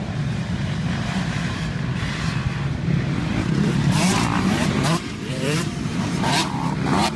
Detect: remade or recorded remade